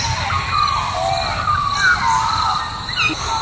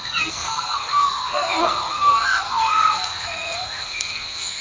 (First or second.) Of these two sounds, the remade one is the second